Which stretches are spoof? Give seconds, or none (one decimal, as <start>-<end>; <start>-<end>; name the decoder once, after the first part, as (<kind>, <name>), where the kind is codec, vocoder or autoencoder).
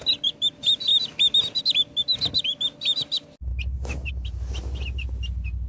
none